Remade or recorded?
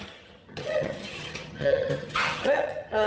remade